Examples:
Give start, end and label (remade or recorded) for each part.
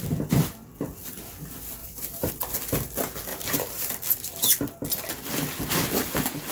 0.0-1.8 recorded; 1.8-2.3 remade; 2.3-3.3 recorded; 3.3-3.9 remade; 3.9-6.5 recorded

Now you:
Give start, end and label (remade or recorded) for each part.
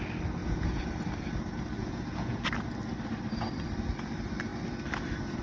0.0-0.4 recorded; 0.4-0.9 remade; 0.9-1.8 recorded; 1.8-2.4 remade; 2.4-5.4 recorded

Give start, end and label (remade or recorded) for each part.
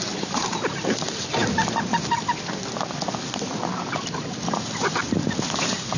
0.0-6.0 recorded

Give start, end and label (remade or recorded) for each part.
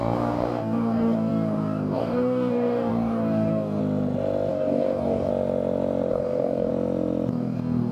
0.0-3.8 remade; 3.8-4.5 recorded; 4.5-5.3 remade; 5.3-6.1 recorded; 6.1-6.7 remade; 6.7-7.3 recorded; 7.3-7.9 remade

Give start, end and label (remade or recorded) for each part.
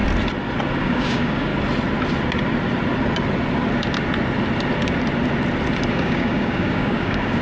0.0-0.8 recorded; 0.8-1.5 remade; 1.5-5.9 recorded; 5.9-7.4 remade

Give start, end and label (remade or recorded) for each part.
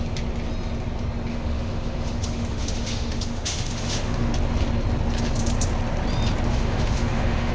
0.0-1.3 recorded; 1.3-4.3 remade; 4.3-6.5 recorded; 6.5-7.5 remade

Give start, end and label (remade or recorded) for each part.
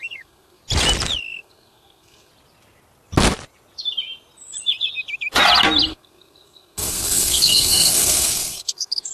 0.0-0.6 remade; 0.6-1.2 recorded; 1.2-2.3 remade; 2.3-5.9 recorded; 5.9-9.1 remade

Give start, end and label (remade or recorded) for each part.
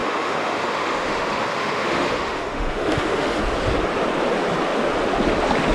0.0-3.4 remade; 3.4-5.7 recorded